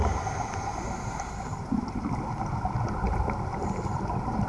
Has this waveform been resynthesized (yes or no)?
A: yes